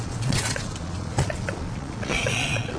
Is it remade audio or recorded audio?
remade